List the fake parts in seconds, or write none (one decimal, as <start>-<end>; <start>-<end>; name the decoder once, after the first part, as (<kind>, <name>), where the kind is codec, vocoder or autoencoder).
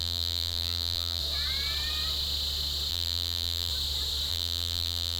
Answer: 0.0-1.2 (vocoder, BigVGAN v2); 2.9-3.7; 4.3-5.2